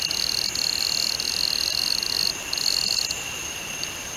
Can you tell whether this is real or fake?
real